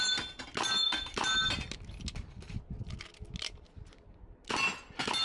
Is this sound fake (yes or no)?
no